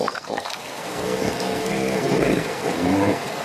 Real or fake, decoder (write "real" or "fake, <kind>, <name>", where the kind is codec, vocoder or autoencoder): fake, codec, SNAC